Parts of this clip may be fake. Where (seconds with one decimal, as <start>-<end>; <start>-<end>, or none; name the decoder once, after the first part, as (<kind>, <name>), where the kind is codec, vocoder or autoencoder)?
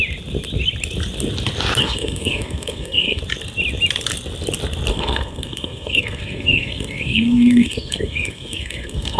1.8-3.2 (codec, SNAC); 4.9-9.2